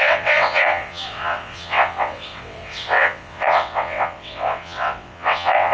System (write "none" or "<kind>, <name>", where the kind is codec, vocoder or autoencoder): vocoder, WaveNeXt